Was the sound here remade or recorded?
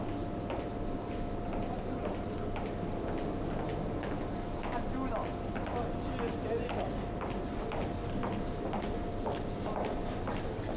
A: recorded